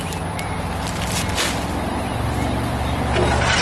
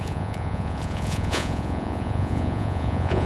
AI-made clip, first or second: second